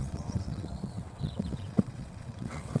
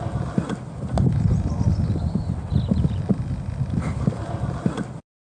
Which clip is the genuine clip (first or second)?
second